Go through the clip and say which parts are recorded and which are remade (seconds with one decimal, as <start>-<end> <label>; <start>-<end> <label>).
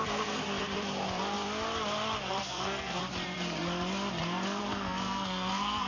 0.0-2.4 recorded; 2.4-3.0 remade; 3.0-4.6 recorded; 4.6-5.9 remade